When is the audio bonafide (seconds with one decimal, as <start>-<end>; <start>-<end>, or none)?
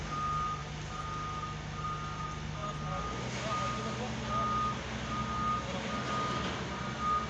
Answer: 0.0-7.3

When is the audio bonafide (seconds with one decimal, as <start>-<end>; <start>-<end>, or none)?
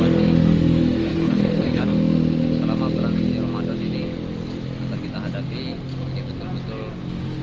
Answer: 0.0-1.1; 1.8-7.4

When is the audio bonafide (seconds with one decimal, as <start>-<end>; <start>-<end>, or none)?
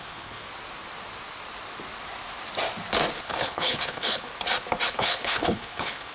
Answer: 0.4-3.2; 4.3-4.9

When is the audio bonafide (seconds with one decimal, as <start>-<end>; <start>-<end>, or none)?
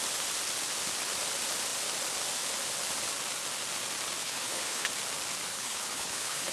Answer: 0.0-4.2; 4.9-5.5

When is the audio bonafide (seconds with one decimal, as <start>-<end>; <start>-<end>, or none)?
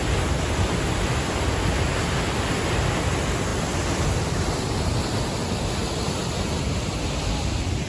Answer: 0.0-7.9